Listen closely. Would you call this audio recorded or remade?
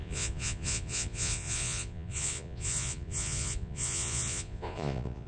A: remade